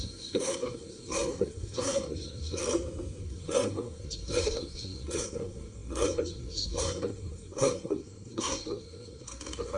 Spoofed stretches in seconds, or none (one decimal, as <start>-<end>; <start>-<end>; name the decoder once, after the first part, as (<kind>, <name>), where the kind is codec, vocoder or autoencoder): 0.0-2.6 (codec, SNAC); 3.2-9.8